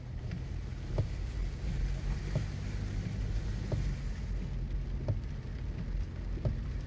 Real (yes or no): yes